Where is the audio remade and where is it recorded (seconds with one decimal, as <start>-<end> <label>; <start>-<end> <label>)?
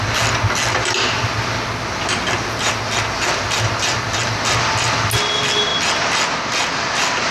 0.0-7.3 recorded